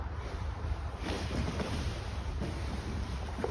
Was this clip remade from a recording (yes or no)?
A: yes